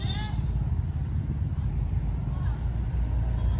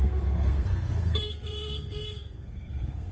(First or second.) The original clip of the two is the first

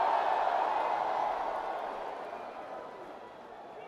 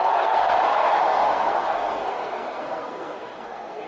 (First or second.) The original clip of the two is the first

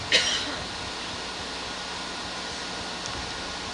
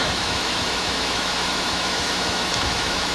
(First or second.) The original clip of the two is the first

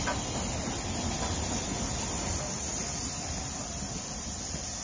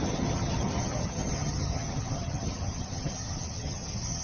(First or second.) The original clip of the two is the first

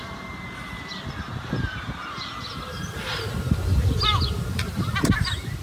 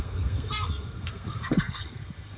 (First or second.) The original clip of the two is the first